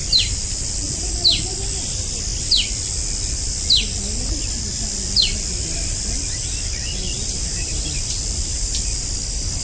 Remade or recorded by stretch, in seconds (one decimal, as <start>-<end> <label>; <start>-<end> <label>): 0.0-9.6 recorded